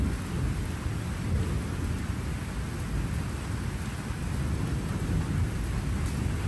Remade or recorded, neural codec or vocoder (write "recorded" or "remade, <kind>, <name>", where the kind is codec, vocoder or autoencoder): recorded